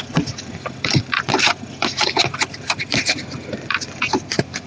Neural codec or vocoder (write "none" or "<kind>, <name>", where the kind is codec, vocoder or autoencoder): vocoder, BigVGAN v2